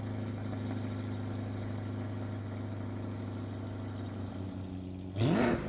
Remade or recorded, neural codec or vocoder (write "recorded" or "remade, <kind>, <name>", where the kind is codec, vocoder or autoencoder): recorded